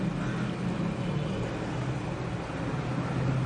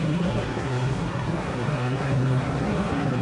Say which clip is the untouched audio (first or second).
first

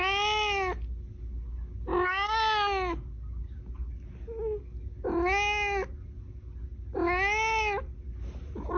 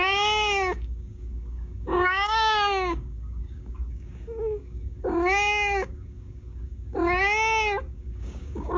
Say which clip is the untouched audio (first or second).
first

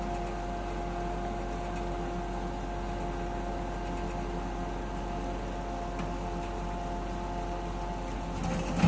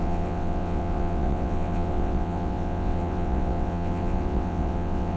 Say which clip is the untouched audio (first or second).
first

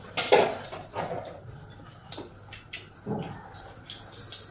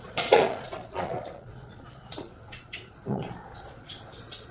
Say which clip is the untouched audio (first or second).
first